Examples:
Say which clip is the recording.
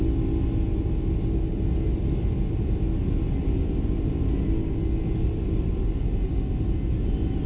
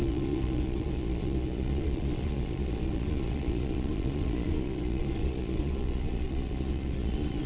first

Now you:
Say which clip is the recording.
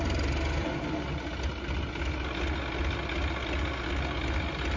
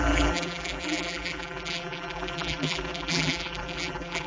first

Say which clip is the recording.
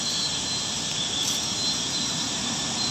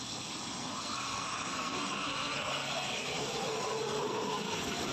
first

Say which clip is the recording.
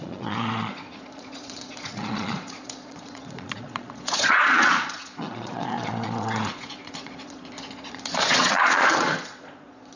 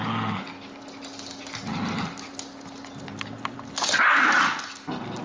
second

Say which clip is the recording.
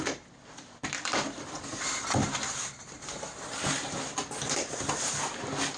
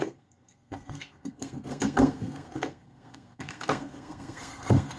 first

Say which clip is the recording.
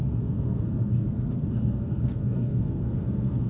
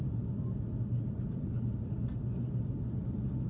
second